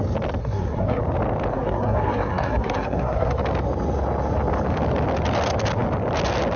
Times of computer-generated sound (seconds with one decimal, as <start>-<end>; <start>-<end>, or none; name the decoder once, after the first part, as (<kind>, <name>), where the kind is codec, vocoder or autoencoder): 0.4-1.0 (codec, SNAC); 1.5-3.4